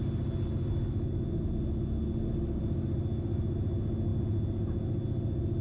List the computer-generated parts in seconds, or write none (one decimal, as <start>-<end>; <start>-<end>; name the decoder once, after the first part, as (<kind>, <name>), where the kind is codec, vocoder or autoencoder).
none